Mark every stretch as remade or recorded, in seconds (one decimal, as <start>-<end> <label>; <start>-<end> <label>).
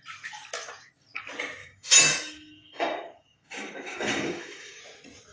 0.0-1.6 recorded; 1.6-4.8 remade; 4.8-5.3 recorded